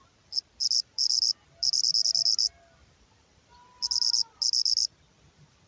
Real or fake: real